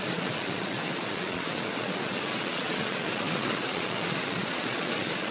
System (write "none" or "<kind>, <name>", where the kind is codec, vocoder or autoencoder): vocoder, Vocos